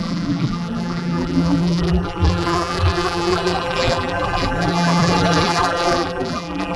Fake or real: fake